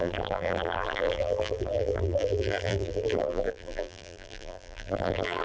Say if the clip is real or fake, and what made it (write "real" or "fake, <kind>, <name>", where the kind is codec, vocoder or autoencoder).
fake, vocoder, BigVGAN v2